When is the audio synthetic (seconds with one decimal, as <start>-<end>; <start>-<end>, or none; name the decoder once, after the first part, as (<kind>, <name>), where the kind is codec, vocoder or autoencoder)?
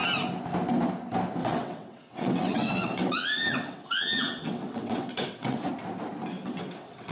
1.4-5.7 (vocoder, WaveNeXt); 6.3-7.1